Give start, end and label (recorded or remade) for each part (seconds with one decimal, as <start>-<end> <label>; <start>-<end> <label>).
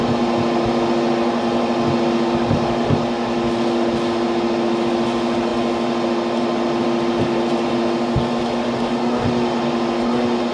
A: 0.0-10.5 recorded